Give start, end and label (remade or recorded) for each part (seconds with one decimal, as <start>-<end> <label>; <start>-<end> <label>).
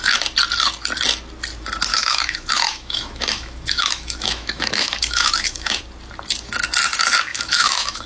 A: 0.0-1.9 recorded; 1.9-5.8 remade; 5.8-7.3 recorded; 7.3-8.1 remade